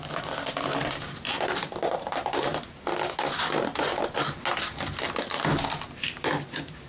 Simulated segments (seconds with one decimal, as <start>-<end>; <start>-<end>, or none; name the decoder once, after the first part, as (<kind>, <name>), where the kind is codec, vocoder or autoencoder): 0.0-2.5 (vocoder, BigVGAN v2); 6.0-6.9